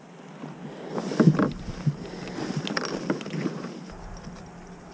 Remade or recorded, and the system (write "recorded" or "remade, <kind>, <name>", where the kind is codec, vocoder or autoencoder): recorded